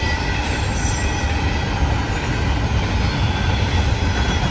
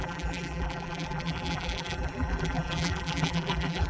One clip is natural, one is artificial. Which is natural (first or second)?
first